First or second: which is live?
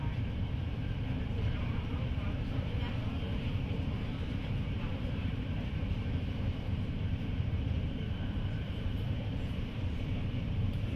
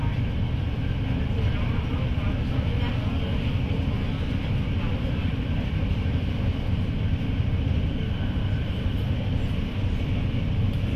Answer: second